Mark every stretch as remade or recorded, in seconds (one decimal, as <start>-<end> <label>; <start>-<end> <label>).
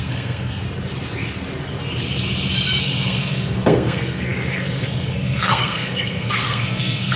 0.0-0.6 remade; 0.6-2.8 recorded; 2.8-7.2 remade